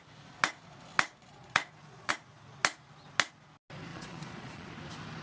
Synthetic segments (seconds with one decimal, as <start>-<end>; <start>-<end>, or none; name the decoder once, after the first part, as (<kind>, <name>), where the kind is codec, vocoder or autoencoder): 1.2-2.1 (vocoder, Vocos); 3.9-4.7